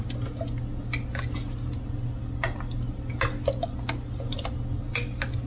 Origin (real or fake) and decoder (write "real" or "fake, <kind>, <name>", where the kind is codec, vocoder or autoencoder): real